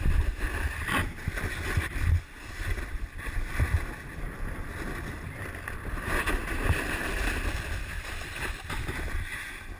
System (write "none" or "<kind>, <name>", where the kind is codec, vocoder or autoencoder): vocoder, BigVGAN v2